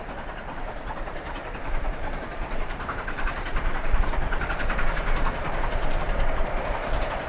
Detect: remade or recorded remade